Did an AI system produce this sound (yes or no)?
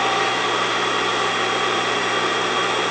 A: yes